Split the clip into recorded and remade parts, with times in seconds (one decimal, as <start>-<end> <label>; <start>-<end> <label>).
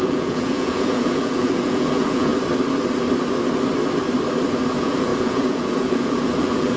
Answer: 0.0-2.3 remade; 2.3-4.6 recorded; 4.6-6.8 remade